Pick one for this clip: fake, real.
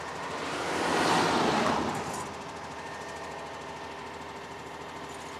real